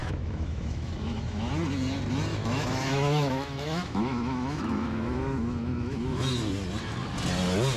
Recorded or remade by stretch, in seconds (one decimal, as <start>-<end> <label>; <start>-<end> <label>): 0.0-1.5 remade; 1.5-2.3 recorded; 2.3-6.2 remade; 6.2-7.8 recorded